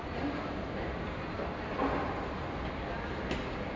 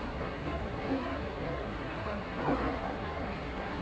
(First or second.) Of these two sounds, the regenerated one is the second